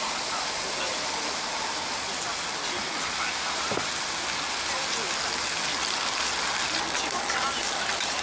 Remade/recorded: recorded